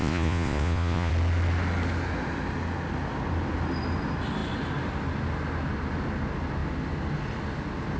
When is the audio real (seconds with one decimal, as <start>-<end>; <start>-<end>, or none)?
1.1-8.0

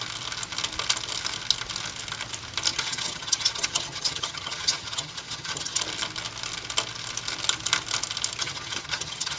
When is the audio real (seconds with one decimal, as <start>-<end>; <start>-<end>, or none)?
0.0-2.7; 5.8-8.4

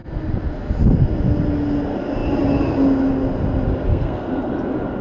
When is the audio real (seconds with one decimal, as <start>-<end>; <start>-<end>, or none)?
0.0-3.9; 4.5-5.0

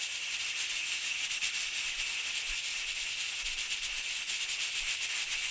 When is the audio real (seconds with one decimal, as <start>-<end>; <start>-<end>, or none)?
0.0-5.5

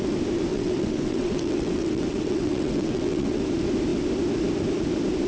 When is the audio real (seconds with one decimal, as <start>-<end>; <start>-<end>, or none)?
0.0-0.5; 3.4-5.3

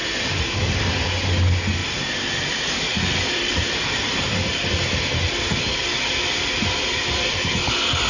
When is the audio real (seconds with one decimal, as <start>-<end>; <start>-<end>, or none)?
0.9-1.8; 5.3-8.1

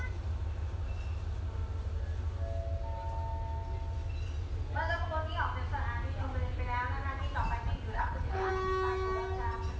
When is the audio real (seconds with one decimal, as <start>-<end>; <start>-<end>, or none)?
0.0-7.9; 8.5-9.8

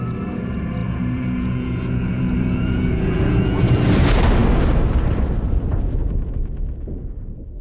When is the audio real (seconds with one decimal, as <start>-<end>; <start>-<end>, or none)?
0.0-0.8; 3.6-7.6